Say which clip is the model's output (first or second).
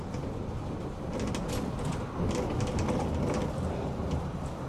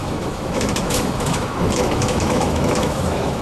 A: second